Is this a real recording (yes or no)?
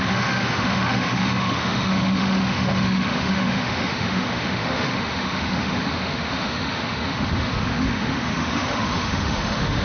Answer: no